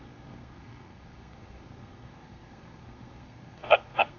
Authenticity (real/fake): fake